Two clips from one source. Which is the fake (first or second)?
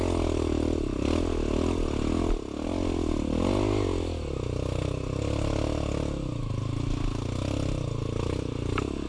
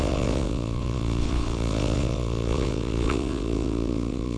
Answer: second